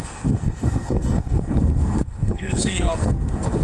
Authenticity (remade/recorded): remade